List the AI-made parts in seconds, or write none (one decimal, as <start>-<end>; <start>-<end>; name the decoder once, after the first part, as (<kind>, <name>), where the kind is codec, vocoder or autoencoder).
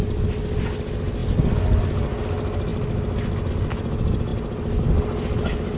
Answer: none